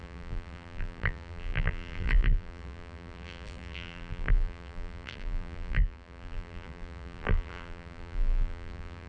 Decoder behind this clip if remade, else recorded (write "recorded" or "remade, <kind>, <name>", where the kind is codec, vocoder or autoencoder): remade, vocoder, BigVGAN v2